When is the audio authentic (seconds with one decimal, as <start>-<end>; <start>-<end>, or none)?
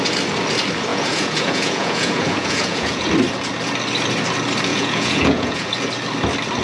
0.0-0.9; 3.1-4.7; 5.7-6.6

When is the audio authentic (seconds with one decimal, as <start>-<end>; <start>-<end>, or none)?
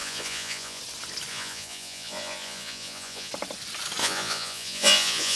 0.8-1.3; 3.3-4.0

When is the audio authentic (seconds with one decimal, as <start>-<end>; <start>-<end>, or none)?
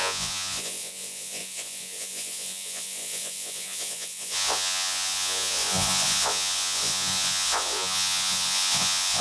none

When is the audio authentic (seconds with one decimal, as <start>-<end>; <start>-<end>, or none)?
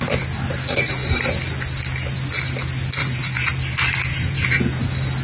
0.0-3.0; 3.5-4.1; 4.8-5.2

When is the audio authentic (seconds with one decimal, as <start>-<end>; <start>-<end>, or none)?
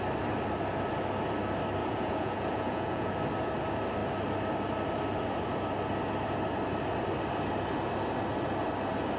0.0-1.8; 3.1-9.2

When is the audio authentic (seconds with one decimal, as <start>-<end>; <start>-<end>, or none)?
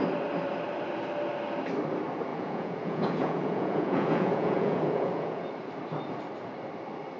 0.0-2.3; 5.5-7.2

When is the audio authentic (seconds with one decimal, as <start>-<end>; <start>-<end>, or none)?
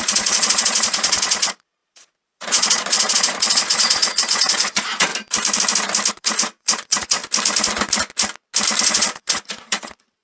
5.1-6.1; 7.2-8.8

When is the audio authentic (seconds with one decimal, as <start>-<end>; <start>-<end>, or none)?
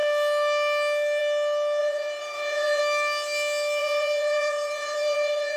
0.0-1.8; 2.8-3.8